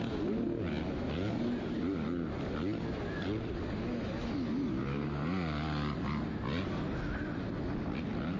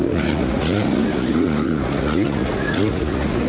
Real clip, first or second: first